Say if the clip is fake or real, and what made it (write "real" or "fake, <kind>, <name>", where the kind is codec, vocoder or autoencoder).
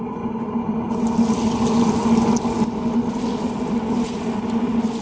real